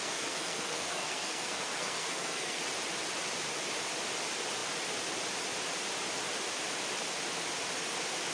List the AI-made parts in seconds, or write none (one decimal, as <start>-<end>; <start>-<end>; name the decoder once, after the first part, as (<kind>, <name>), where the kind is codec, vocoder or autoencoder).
0.0-2.6 (codec, SNAC)